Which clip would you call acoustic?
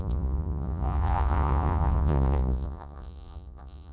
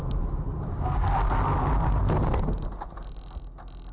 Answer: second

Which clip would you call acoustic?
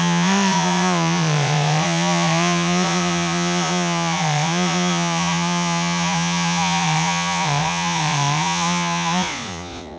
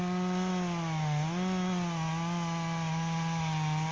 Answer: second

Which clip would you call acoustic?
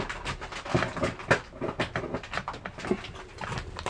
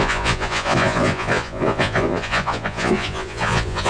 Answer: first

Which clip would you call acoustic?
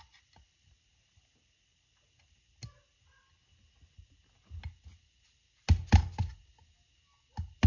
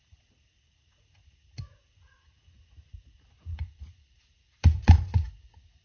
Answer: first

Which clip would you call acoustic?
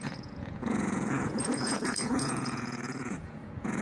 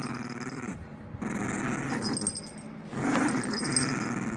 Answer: second